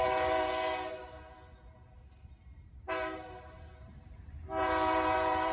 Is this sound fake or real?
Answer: fake